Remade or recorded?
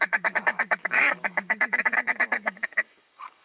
remade